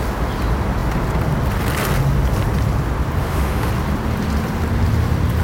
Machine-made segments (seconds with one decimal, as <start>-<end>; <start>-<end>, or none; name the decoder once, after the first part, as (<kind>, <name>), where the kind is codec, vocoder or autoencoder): 3.2-3.7 (autoencoder, DAC-VAE)